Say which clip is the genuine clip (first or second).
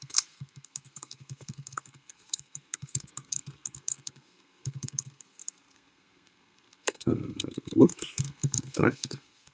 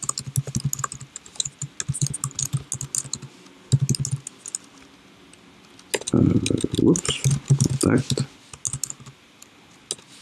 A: second